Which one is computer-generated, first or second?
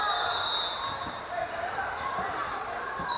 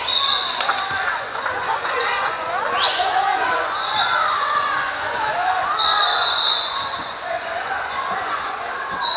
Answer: second